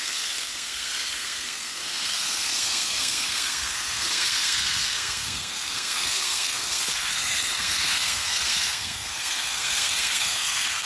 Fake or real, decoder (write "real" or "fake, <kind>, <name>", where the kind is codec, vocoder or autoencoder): fake, codec, SNAC